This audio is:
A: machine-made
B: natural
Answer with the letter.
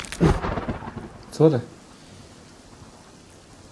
B